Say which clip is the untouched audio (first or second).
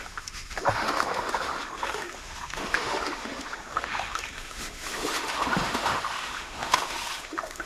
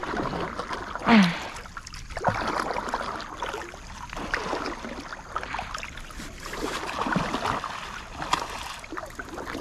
second